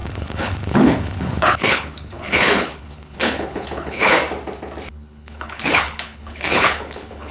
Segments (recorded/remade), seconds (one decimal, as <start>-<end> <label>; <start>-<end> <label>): 0.0-4.2 remade; 4.2-4.9 recorded; 4.9-7.3 remade